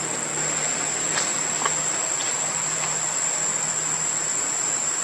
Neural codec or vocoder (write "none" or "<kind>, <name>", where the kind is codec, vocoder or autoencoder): none